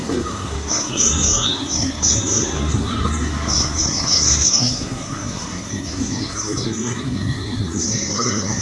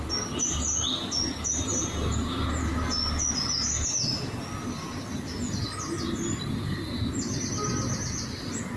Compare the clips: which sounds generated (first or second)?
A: first